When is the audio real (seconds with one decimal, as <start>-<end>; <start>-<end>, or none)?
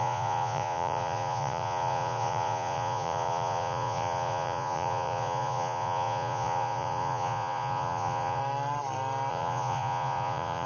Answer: 8.4-9.3